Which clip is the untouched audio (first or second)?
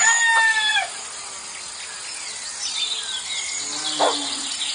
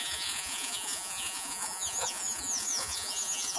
first